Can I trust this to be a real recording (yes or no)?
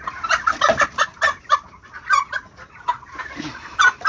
yes